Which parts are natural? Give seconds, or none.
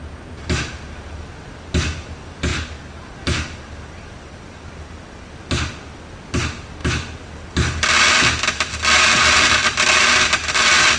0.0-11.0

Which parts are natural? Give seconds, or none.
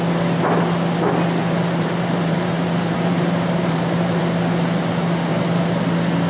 0.0-1.4; 4.2-6.3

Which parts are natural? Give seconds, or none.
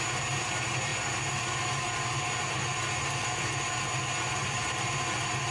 0.0-5.5